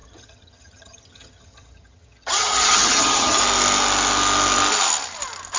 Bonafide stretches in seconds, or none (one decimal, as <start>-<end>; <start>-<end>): 3.4-5.6